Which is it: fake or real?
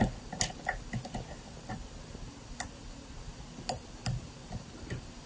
real